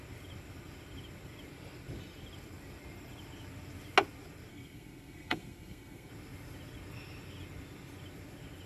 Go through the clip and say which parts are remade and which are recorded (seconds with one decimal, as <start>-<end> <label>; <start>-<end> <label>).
0.0-4.5 recorded; 4.5-6.1 remade; 6.1-8.7 recorded